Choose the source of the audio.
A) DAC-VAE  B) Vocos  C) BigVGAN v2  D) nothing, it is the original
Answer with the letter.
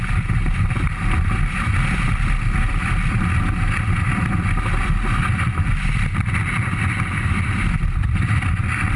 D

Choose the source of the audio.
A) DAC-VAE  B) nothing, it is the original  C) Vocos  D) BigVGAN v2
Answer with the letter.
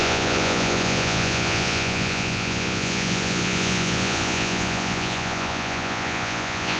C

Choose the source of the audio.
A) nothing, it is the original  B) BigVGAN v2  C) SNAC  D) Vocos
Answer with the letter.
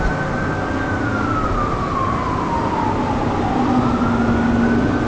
A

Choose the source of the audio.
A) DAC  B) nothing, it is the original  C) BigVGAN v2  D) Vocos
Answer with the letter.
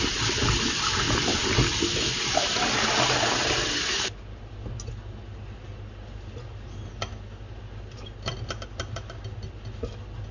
B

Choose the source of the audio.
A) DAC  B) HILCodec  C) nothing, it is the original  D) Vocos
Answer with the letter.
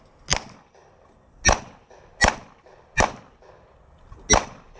C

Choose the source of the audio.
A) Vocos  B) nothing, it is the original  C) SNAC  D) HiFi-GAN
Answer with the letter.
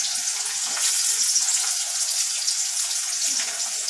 A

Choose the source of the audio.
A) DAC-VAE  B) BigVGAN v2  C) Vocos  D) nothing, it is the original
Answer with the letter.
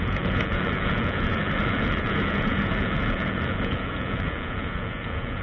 C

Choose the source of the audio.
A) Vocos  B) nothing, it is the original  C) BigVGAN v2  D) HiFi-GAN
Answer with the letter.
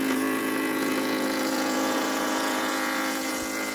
A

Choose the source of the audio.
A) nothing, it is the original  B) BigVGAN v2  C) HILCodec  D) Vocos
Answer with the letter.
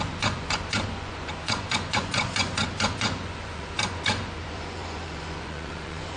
D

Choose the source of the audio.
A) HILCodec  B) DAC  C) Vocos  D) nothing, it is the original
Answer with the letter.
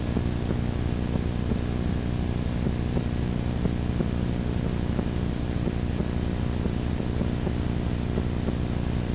D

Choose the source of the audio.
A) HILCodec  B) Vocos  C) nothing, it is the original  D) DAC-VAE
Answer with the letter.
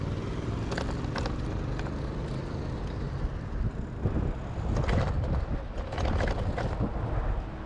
C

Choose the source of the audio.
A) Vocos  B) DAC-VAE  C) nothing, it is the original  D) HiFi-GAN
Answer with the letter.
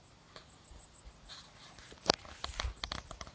C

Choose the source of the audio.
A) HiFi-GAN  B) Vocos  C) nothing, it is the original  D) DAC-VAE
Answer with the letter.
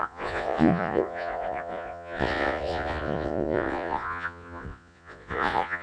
B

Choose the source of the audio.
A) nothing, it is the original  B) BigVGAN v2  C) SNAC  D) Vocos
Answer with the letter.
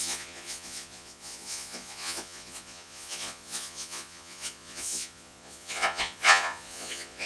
D